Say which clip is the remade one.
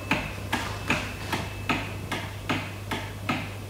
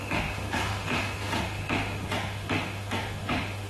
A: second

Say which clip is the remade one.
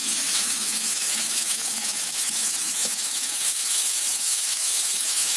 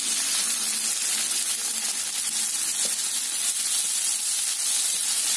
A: first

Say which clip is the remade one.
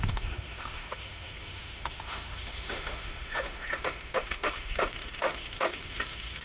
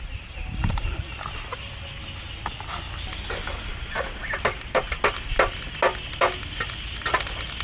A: first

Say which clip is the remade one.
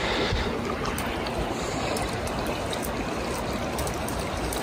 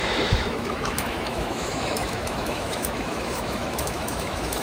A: second